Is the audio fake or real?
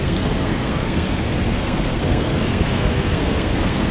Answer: fake